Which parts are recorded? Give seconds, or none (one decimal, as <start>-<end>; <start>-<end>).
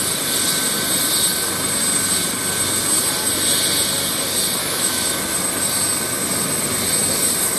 0.0-4.6; 5.2-7.6